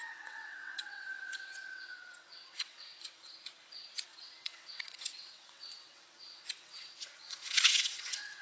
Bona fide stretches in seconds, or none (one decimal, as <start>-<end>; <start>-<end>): 3.3-4.1